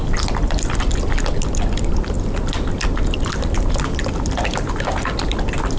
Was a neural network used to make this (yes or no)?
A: no